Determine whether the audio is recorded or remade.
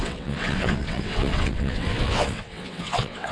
remade